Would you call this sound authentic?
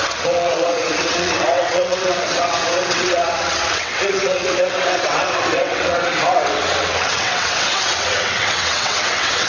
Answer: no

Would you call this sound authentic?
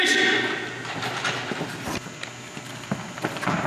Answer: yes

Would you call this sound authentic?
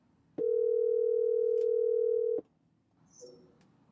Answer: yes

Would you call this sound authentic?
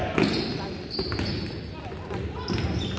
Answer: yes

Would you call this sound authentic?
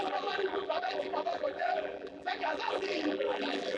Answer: no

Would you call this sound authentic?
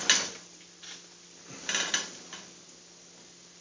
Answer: yes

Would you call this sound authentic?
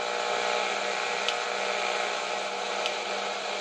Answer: yes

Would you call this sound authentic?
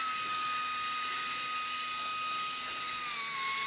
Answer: yes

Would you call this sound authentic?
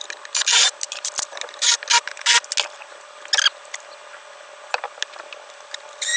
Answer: yes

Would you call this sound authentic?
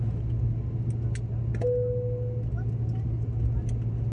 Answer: yes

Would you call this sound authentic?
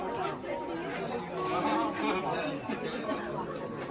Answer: yes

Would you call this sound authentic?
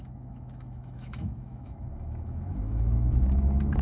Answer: no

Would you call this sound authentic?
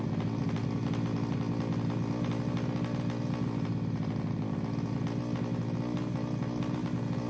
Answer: yes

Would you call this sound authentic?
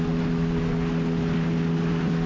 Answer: yes